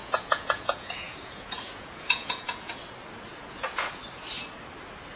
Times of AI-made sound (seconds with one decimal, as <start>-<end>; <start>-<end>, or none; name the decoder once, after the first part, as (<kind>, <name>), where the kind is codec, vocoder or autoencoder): 0.0-2.8 (vocoder, Vocos); 3.3-4.0